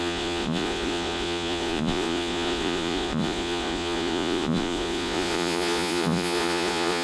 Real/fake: fake